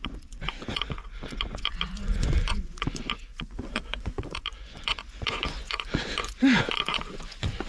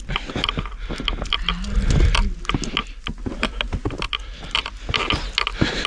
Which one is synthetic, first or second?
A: first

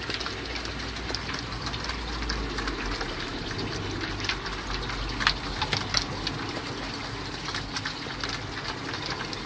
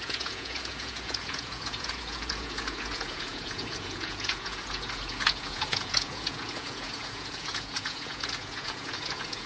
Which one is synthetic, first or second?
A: second